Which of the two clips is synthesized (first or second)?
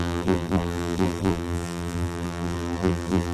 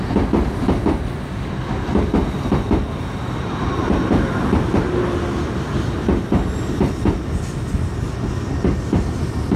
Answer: first